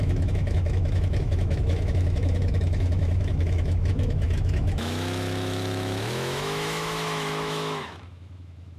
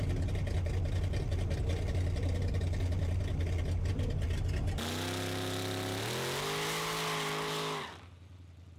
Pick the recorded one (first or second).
second